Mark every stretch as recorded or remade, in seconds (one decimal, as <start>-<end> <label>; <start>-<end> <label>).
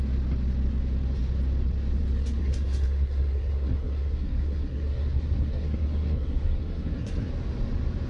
0.0-2.4 recorded; 2.4-7.3 remade; 7.3-8.1 recorded